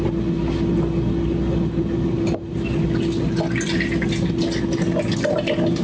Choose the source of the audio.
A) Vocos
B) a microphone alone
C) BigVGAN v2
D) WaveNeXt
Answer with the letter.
B